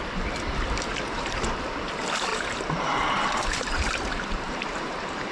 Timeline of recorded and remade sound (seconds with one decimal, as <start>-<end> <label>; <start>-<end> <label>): 0.0-0.9 recorded; 0.9-1.6 remade; 1.6-2.3 recorded; 2.3-5.3 remade